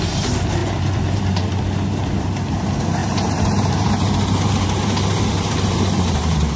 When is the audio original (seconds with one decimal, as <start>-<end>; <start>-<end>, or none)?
0.0-0.6; 1.2-3.0